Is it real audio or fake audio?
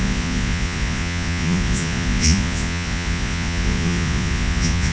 fake